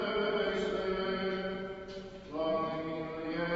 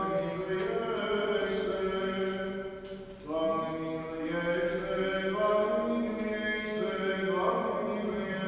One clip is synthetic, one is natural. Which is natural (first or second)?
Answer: second